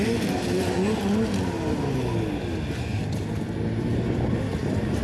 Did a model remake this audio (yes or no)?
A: no